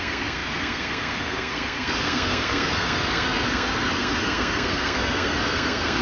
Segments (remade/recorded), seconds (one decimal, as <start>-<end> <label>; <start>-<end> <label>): 0.0-6.0 remade